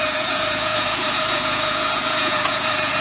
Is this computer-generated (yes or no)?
yes